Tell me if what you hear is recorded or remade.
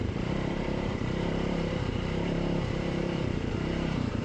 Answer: remade